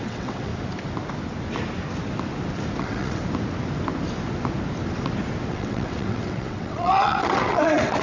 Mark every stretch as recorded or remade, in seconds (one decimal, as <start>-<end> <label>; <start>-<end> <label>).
0.0-0.5 remade; 0.5-2.8 recorded; 2.8-3.2 remade; 3.2-5.5 recorded; 5.5-8.0 remade